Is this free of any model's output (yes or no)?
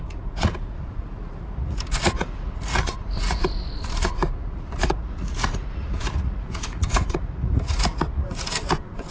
no